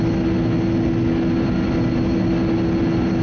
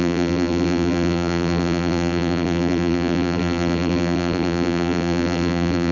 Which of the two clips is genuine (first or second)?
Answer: first